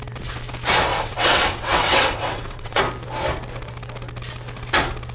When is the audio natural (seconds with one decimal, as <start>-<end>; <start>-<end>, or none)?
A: 0.0-0.9; 2.8-5.1